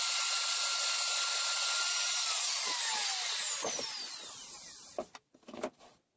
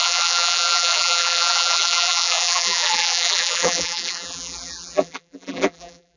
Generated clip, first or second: second